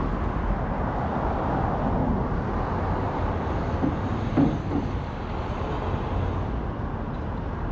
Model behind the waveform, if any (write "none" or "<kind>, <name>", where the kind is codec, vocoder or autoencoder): none